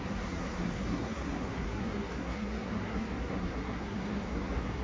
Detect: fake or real fake